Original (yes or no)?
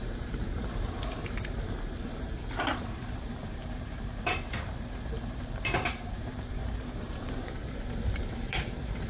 no